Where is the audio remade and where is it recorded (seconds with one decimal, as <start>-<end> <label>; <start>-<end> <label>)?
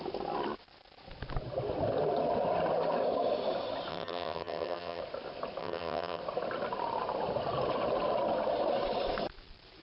0.0-3.9 recorded; 3.9-5.0 remade; 5.0-5.6 recorded; 5.6-6.2 remade; 6.2-9.8 recorded